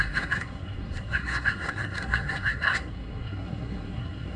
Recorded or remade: remade